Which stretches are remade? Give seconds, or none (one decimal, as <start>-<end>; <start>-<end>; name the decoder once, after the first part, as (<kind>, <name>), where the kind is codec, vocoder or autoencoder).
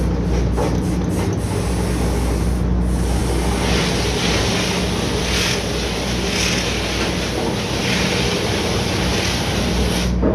none